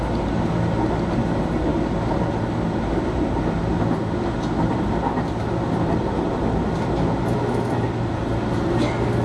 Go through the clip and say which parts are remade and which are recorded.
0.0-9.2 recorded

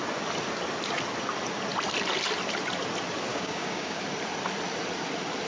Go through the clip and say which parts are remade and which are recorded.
0.0-3.3 recorded; 3.3-4.0 remade; 4.0-5.5 recorded

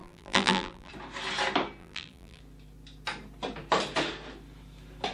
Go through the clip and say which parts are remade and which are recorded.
0.0-0.9 remade; 0.9-1.8 recorded; 1.8-2.4 remade; 2.4-5.1 recorded

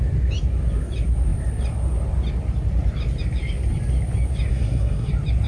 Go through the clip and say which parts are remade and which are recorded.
0.0-4.5 recorded; 4.5-5.1 remade; 5.1-5.5 recorded

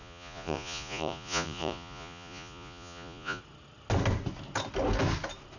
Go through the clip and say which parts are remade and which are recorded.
0.0-3.4 remade; 3.4-5.6 recorded

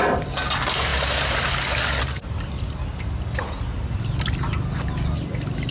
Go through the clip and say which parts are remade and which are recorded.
0.0-5.7 recorded

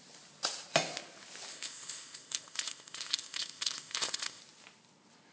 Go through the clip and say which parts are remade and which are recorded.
0.0-1.5 recorded; 1.5-4.4 remade; 4.4-5.3 recorded